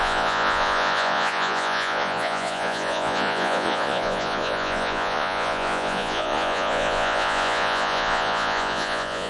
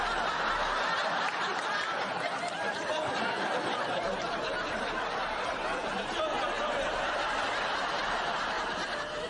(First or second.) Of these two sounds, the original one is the second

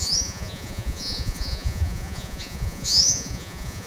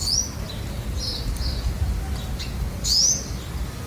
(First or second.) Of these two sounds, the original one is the second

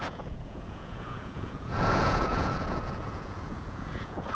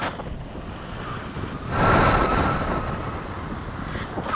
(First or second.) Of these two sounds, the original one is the second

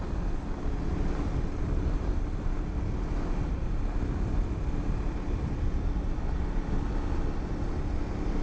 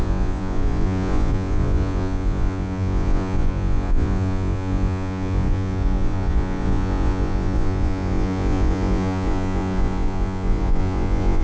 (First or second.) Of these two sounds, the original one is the first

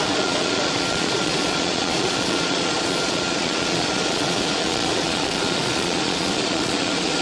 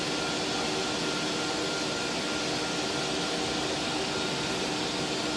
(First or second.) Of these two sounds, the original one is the second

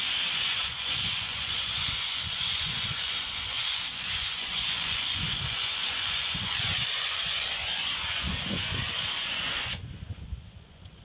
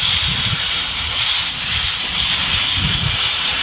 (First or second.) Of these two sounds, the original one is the second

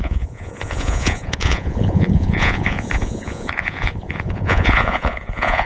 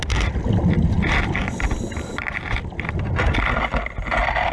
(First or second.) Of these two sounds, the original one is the second